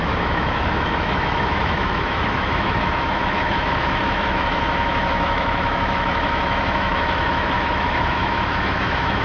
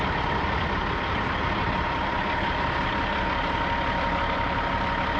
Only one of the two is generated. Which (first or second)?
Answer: first